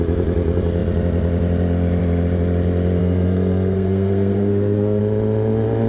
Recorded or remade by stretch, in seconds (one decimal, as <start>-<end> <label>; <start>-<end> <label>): 0.0-3.0 recorded; 3.0-5.0 remade; 5.0-5.9 recorded